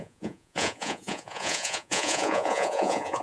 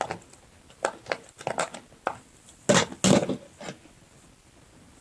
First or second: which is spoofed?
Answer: first